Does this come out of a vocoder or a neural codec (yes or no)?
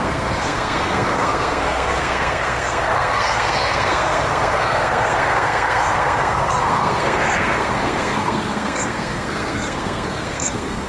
yes